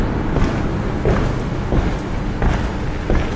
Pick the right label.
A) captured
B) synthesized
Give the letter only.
A